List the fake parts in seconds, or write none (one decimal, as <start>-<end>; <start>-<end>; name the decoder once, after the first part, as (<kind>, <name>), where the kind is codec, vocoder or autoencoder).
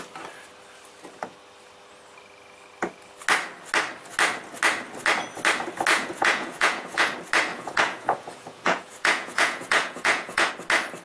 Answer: 5.9-7.1 (vocoder, Vocos); 7.5-10.5